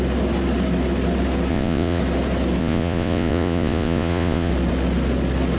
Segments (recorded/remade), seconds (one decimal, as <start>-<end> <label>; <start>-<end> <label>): 0.0-1.5 recorded; 1.5-2.0 remade; 2.0-2.6 recorded; 2.6-4.5 remade; 4.5-5.6 recorded